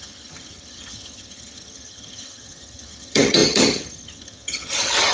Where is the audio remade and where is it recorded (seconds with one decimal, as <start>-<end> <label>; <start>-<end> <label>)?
0.0-5.1 remade